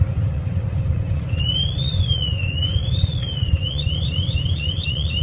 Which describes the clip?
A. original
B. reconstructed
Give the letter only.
B